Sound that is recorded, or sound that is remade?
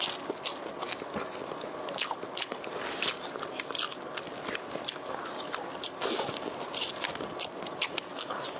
recorded